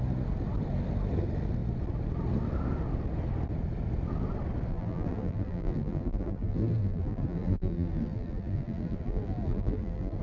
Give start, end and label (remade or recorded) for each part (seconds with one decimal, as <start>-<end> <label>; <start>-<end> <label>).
0.0-4.7 recorded; 4.7-10.2 remade